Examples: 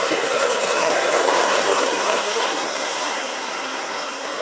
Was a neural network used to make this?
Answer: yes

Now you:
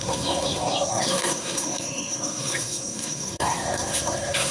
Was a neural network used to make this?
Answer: yes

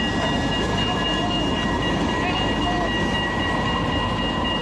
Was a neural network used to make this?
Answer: no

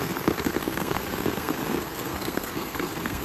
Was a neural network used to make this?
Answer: yes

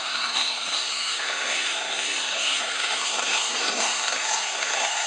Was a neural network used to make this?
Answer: yes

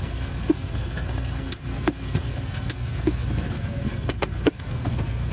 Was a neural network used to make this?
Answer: yes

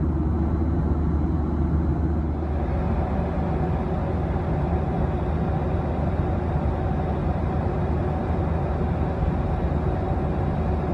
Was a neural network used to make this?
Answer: no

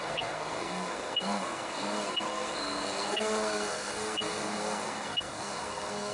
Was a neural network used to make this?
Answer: yes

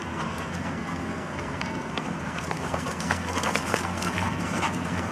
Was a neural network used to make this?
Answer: yes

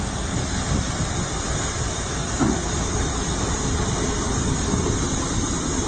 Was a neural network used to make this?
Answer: no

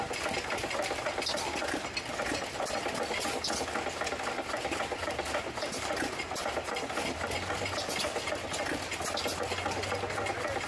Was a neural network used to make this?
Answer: no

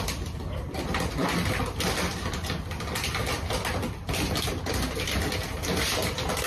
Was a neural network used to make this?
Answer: no